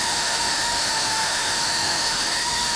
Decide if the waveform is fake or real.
fake